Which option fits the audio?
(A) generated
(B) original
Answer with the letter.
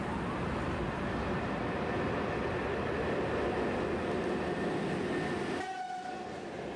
B